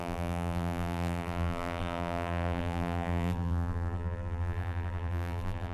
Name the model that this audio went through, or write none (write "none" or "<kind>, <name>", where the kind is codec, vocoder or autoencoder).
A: vocoder, BigVGAN v2